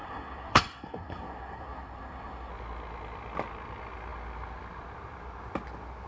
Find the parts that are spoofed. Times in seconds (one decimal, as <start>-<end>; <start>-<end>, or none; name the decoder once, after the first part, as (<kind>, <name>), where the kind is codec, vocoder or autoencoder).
0.0-2.5 (codec, SNAC)